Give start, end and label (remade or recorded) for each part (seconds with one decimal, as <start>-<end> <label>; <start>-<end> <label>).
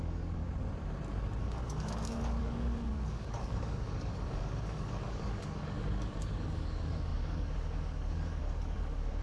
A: 0.0-0.4 remade; 0.4-1.4 recorded; 1.4-9.2 remade